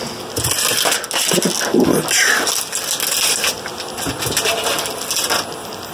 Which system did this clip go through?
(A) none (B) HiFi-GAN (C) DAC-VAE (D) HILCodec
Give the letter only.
A